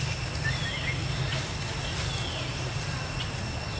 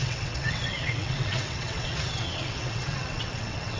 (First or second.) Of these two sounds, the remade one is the second